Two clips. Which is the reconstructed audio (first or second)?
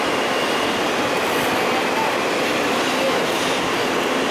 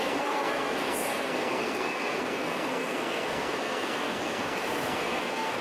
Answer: second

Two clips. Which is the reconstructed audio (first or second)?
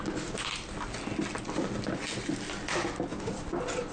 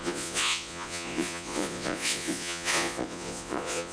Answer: second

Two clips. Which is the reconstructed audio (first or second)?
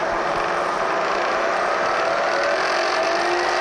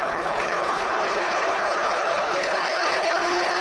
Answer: second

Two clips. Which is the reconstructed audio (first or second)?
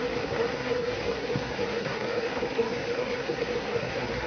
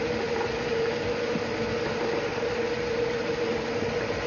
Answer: first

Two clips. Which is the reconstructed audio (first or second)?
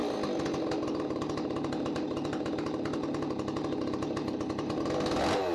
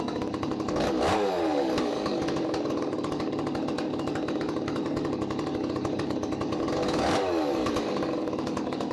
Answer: second